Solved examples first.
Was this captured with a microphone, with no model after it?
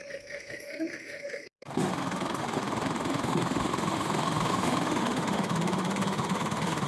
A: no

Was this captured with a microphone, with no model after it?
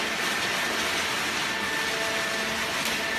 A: yes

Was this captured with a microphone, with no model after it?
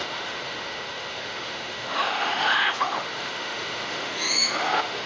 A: no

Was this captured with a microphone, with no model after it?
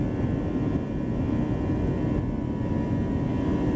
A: yes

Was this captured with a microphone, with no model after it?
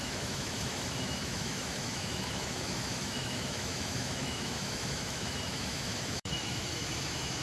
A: no